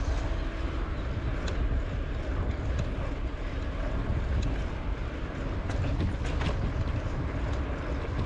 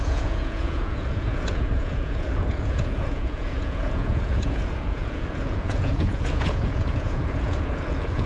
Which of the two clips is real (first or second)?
first